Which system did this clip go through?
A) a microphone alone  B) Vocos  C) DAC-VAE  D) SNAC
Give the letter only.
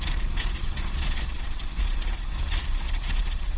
B